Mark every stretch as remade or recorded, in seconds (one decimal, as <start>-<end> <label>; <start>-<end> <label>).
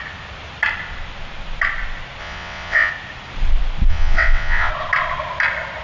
0.0-2.2 recorded; 2.2-2.9 remade; 2.9-3.9 recorded; 3.9-4.7 remade; 4.7-5.8 recorded